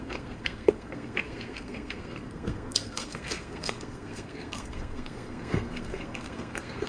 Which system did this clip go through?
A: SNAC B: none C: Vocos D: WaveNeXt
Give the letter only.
A